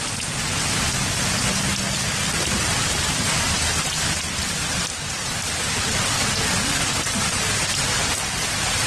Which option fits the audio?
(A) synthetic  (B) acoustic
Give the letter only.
B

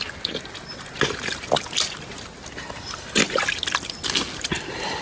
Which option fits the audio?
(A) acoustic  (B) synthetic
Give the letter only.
A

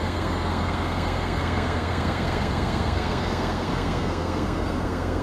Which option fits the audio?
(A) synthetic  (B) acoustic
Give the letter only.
A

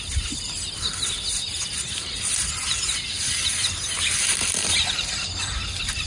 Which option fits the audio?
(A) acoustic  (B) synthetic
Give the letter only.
A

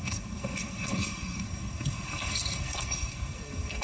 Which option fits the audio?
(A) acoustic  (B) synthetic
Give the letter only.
B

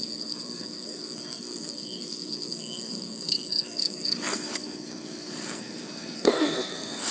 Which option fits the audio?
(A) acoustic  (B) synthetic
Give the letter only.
B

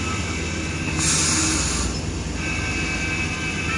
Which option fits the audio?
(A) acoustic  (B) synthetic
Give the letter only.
A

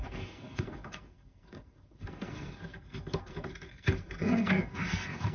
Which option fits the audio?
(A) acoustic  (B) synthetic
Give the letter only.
B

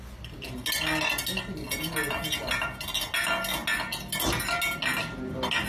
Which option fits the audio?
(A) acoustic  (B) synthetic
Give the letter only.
A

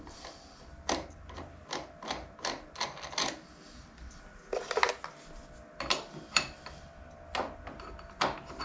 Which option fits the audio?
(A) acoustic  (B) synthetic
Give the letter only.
A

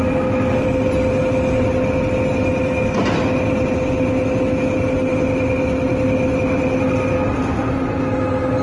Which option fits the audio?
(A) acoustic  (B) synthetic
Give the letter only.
A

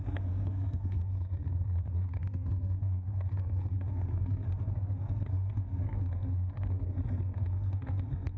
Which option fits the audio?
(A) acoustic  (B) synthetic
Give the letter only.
B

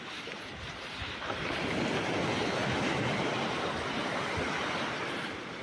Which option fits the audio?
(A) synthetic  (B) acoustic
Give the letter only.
B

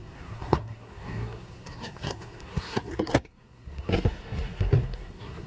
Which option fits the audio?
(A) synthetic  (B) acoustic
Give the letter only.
A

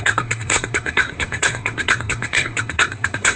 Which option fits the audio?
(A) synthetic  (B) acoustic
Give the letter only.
A